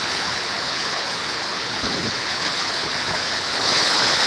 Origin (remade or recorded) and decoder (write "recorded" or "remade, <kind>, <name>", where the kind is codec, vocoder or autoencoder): remade, codec, HILCodec